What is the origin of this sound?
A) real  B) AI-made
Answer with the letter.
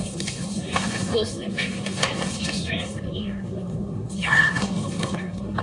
B